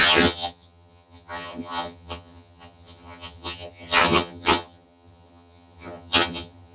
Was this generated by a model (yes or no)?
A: yes